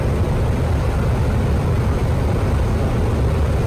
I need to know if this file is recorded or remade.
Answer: recorded